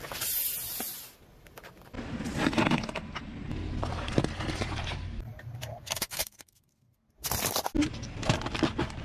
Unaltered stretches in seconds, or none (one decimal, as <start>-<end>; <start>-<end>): 0.0-5.7; 7.0-9.0